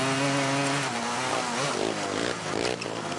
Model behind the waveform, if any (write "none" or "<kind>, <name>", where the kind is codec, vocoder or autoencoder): none